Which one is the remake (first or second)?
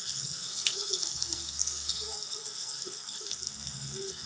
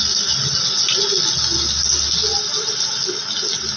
first